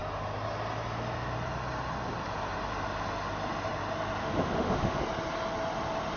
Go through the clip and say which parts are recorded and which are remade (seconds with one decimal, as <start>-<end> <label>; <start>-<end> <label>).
0.0-4.2 recorded; 4.2-5.0 remade; 5.0-6.2 recorded